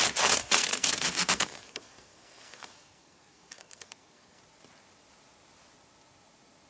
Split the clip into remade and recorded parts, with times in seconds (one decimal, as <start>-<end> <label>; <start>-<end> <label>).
0.0-0.4 recorded; 0.4-4.4 remade; 4.4-6.7 recorded